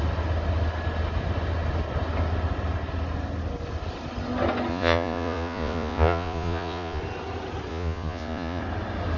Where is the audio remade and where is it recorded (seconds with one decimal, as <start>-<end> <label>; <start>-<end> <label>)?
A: 0.0-4.7 recorded; 4.7-7.0 remade; 7.0-7.7 recorded; 7.7-8.6 remade; 8.6-9.2 recorded